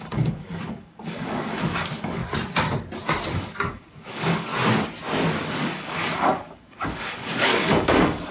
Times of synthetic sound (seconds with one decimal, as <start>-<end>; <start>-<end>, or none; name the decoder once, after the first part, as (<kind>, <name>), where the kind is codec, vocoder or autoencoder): 0.0-2.2 (codec, DAC); 3.4-4.5; 5.5-8.3